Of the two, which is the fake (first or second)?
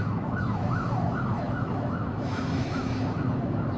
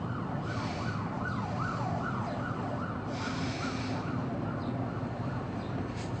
first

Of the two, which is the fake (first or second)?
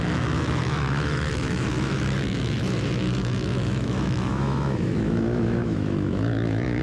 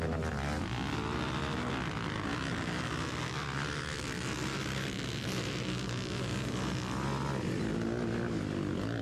first